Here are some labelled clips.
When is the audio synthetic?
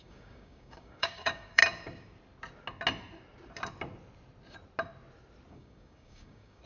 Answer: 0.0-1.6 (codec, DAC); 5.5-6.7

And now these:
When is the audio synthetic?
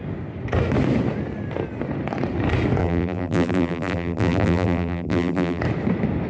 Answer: 2.8-5.6 (vocoder, BigVGAN v2)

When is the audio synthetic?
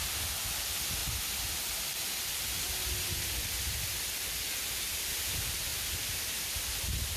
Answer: none